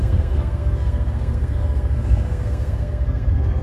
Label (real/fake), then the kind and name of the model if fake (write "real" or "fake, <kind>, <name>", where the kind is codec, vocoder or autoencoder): fake, codec, SNAC